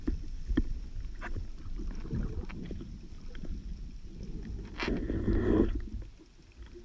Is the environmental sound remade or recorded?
recorded